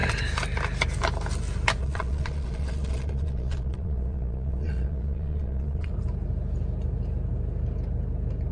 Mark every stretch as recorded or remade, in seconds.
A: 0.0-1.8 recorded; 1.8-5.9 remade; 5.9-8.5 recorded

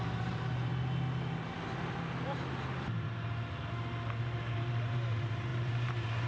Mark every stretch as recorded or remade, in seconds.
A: 0.0-0.7 remade; 0.7-4.2 recorded; 4.2-6.3 remade

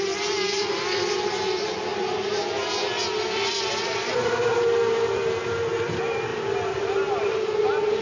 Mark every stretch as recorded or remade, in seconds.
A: 0.0-8.0 recorded

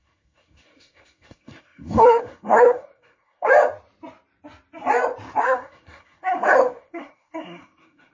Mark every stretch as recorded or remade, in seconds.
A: 0.0-3.5 remade; 3.5-5.4 recorded; 5.4-8.1 remade

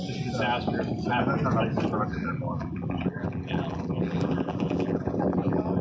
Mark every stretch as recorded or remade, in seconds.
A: 0.0-2.1 recorded; 2.1-5.8 remade

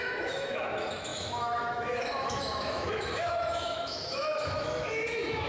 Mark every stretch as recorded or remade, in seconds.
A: 0.0-5.5 remade

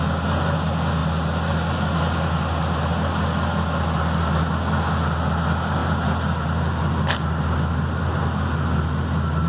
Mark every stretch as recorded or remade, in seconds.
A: 0.0-9.5 recorded

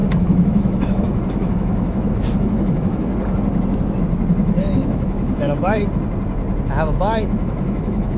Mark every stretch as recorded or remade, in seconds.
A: 0.0-3.1 remade; 3.1-4.6 recorded; 4.6-5.8 remade; 5.8-6.7 recorded; 6.7-8.2 remade